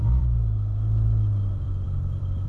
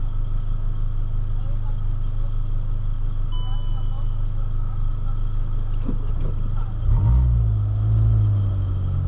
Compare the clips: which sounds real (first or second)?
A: second